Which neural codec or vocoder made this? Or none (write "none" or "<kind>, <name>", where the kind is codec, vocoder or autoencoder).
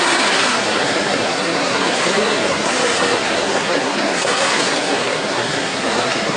codec, SNAC